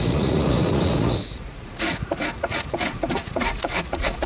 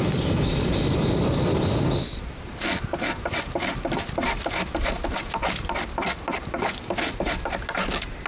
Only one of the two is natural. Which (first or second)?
second